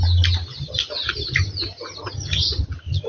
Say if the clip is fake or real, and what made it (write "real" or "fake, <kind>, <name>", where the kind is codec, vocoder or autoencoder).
real